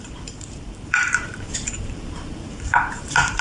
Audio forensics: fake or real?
fake